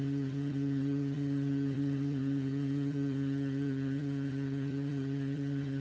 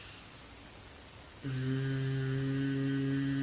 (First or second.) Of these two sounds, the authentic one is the second